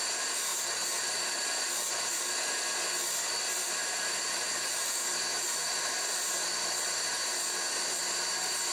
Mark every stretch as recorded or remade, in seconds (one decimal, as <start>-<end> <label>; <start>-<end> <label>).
0.0-0.5 recorded; 0.5-1.9 remade; 1.9-3.6 recorded; 3.6-4.9 remade; 4.9-8.7 recorded